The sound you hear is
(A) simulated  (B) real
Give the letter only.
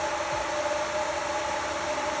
B